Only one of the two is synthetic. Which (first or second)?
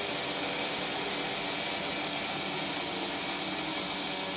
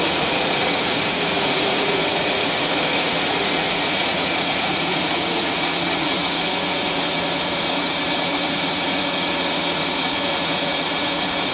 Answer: second